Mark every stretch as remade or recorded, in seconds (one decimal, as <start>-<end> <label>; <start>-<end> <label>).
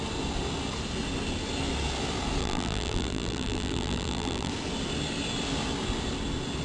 0.0-2.4 recorded; 2.4-4.5 remade; 4.5-6.6 recorded